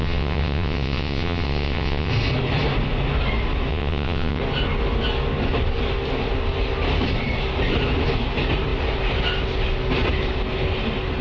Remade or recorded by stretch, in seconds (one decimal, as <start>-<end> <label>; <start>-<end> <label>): 0.0-2.1 remade; 2.1-3.7 recorded; 3.7-4.4 remade; 4.4-11.2 recorded

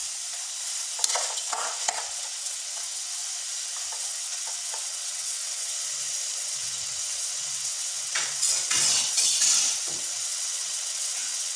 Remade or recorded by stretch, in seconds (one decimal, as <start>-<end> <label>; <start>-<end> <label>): 0.0-1.1 recorded; 1.1-3.2 remade; 3.2-4.0 recorded; 4.0-5.7 remade; 5.7-6.4 recorded; 6.4-11.6 remade

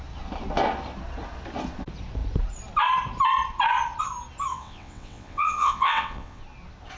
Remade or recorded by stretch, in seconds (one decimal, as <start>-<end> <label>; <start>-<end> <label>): 0.0-4.5 recorded; 4.5-6.4 remade; 6.4-7.0 recorded

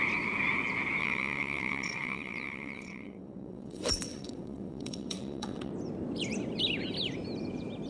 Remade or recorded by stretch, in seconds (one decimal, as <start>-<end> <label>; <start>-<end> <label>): 0.0-1.0 recorded; 1.0-5.7 remade; 5.7-7.9 recorded

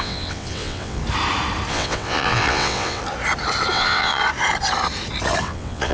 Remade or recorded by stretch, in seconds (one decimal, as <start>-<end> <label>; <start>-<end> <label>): 0.0-1.0 remade; 1.0-1.7 recorded; 1.7-3.0 remade; 3.0-3.7 recorded; 3.7-4.2 remade; 4.2-5.4 recorded; 5.4-5.9 remade

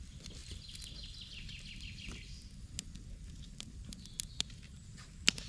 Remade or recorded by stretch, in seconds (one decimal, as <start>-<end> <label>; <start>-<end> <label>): 0.0-5.5 recorded

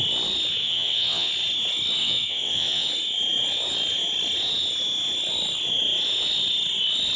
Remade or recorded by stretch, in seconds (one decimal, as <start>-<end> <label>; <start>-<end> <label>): 0.0-0.6 recorded; 0.6-1.3 remade; 1.3-2.0 recorded; 2.0-2.9 remade; 2.9-7.2 recorded

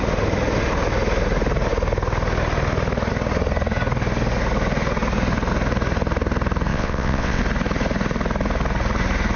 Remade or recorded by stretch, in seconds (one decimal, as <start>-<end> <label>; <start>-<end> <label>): 0.0-6.7 recorded; 6.7-7.4 remade; 7.4-9.4 recorded